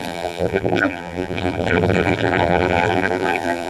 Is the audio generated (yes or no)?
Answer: yes